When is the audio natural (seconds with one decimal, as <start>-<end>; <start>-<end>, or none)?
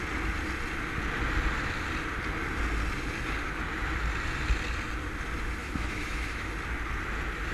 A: 0.0-5.6; 6.5-7.5